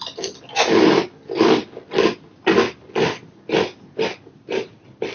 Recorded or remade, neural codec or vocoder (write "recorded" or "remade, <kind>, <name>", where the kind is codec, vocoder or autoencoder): recorded